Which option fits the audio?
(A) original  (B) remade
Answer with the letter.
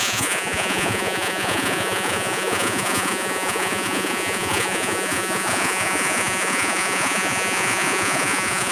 B